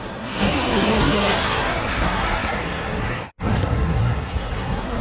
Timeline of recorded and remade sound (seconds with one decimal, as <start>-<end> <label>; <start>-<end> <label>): 0.0-5.0 remade